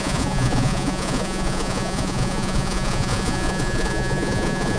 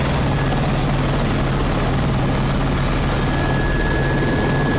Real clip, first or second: second